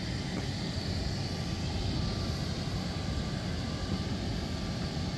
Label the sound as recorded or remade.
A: recorded